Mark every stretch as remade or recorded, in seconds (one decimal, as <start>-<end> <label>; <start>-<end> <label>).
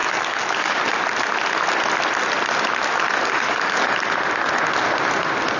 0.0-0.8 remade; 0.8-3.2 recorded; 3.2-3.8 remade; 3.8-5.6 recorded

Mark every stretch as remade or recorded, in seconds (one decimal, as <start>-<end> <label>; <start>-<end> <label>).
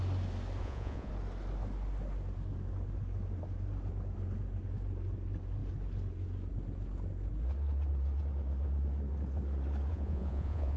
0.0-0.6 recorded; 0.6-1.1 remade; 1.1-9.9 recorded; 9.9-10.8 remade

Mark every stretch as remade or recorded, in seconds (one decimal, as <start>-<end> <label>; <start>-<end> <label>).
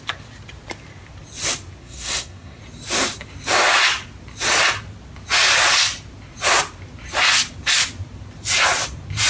0.0-1.8 recorded; 1.8-2.6 remade; 2.6-9.3 recorded